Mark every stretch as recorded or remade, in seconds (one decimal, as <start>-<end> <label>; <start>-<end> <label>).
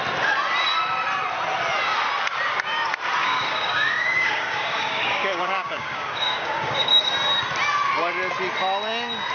0.0-3.2 recorded; 3.2-7.1 remade; 7.1-9.3 recorded